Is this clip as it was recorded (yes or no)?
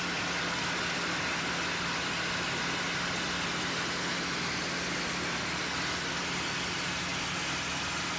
yes